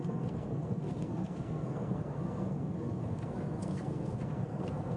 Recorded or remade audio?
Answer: remade